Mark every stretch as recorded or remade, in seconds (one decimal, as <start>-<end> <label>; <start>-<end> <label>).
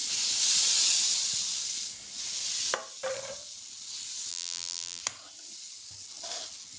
0.0-4.3 recorded; 4.3-5.0 remade; 5.0-6.8 recorded